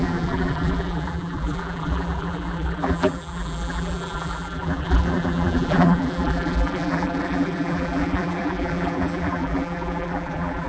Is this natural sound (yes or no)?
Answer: no